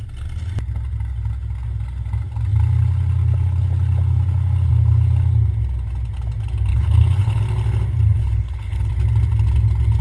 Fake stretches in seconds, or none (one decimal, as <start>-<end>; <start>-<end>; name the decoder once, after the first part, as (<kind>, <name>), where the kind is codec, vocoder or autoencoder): 6.7-7.4 (codec, HILCodec); 8.1-8.9